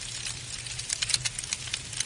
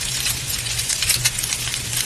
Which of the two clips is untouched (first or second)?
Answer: first